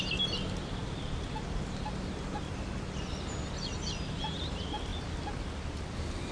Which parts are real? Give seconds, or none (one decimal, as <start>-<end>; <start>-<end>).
0.0-6.3